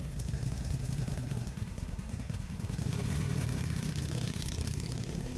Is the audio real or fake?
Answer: fake